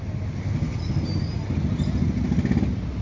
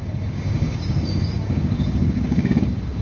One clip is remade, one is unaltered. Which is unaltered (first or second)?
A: first